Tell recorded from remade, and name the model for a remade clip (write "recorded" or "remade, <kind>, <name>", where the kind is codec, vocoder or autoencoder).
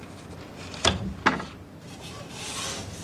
recorded